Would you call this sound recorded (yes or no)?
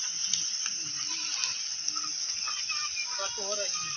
yes